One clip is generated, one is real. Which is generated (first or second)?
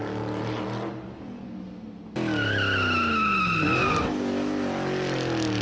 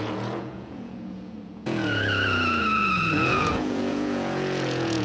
second